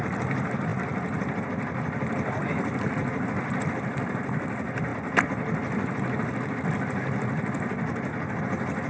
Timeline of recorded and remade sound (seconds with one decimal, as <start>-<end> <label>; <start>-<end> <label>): 0.0-4.9 remade; 4.9-8.4 recorded; 8.4-8.9 remade

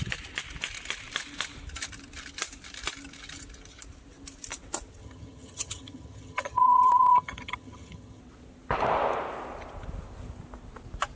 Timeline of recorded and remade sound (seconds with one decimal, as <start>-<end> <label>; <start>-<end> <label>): 0.0-5.0 recorded; 5.0-8.2 remade; 8.2-11.2 recorded